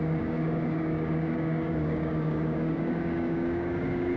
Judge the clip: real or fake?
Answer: fake